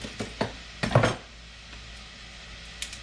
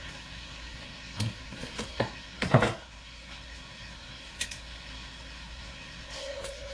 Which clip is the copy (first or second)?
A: second